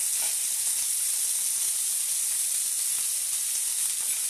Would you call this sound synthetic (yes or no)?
no